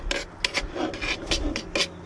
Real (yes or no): yes